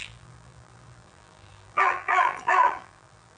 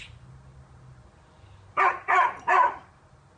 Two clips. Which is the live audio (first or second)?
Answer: second